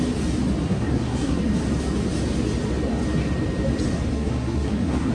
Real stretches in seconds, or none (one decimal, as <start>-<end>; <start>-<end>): 0.0-0.6; 1.5-4.1